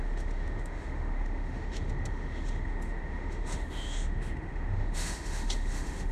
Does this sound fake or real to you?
fake